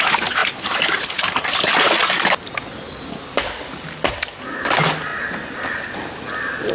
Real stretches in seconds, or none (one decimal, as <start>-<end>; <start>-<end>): 0.0-6.7